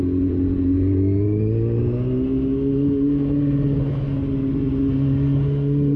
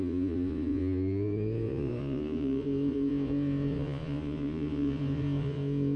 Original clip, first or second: first